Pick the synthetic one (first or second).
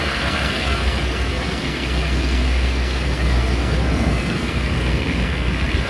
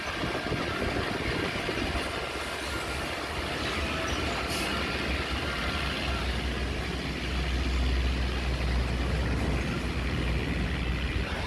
first